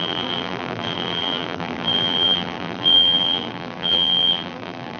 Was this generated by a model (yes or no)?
yes